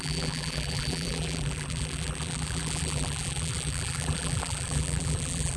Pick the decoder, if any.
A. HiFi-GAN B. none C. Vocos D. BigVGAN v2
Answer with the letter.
D